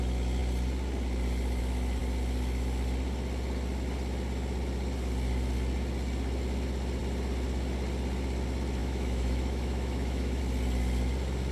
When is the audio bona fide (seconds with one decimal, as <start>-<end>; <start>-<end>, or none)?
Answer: 0.0-8.8; 10.4-11.5